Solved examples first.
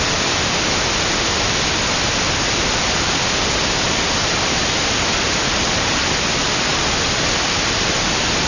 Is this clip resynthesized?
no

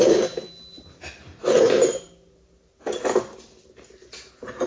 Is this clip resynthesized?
no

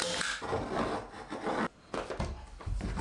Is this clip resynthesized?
no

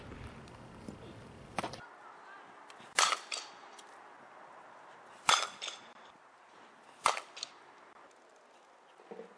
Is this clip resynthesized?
no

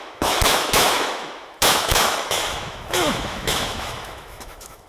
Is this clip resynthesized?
yes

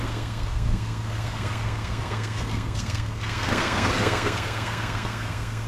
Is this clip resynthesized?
yes